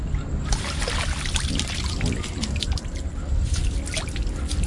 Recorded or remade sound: recorded